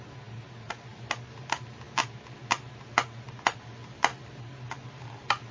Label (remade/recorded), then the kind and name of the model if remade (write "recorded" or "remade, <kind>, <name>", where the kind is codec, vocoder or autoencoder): recorded